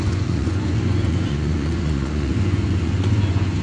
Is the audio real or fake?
fake